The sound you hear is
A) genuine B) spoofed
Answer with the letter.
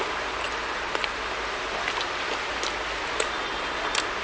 A